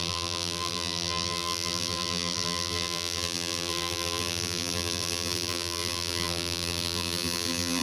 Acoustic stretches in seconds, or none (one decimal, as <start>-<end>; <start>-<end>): none